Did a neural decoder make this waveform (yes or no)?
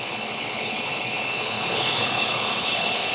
yes